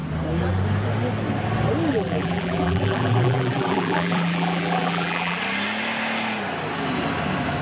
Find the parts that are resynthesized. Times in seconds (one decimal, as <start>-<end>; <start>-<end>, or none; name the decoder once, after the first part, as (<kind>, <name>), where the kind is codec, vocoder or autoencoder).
1.9-5.4 (vocoder, BigVGAN v2)